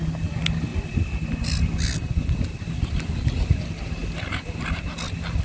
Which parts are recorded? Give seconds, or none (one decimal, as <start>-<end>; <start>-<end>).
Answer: 0.0-5.4